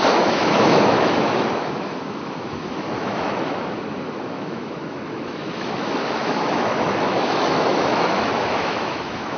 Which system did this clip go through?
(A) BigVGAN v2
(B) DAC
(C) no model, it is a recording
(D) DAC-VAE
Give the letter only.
D